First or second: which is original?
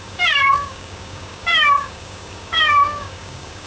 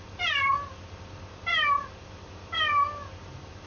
second